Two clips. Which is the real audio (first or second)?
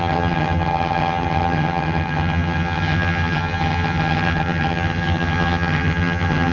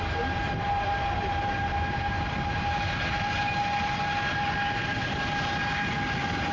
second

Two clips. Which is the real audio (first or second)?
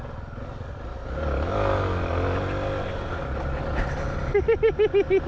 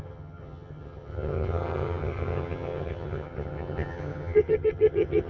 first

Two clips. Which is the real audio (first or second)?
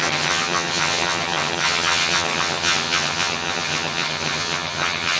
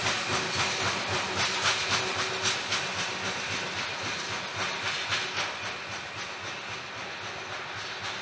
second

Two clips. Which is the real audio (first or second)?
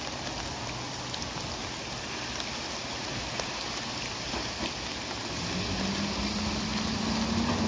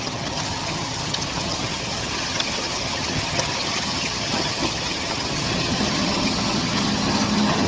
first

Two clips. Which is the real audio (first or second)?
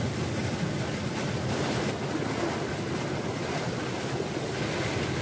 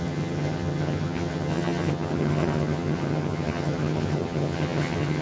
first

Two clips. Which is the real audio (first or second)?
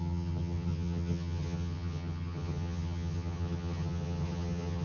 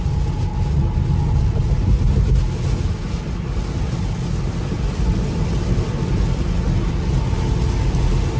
second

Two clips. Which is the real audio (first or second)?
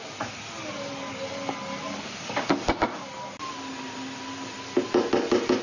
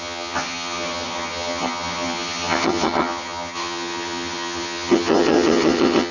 first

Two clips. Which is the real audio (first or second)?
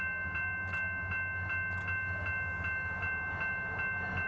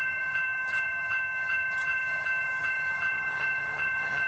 first